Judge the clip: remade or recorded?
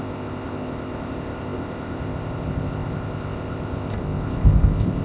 remade